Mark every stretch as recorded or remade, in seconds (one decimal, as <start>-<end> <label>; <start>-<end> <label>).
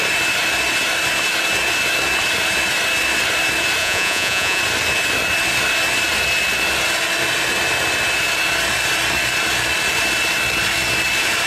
0.0-3.8 recorded; 3.8-4.6 remade; 4.6-11.5 recorded